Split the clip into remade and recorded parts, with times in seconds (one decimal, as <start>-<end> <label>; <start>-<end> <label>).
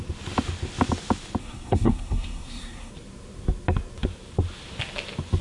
0.0-1.4 recorded; 1.4-2.9 remade; 2.9-5.4 recorded